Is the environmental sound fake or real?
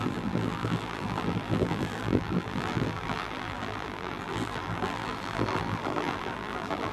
fake